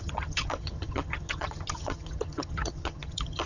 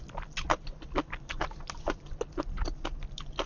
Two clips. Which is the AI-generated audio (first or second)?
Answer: first